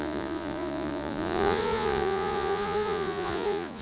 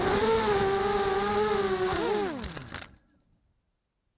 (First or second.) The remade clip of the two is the first